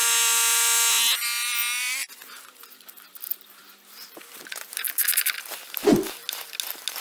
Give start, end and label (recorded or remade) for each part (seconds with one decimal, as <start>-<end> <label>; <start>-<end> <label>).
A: 0.0-7.0 recorded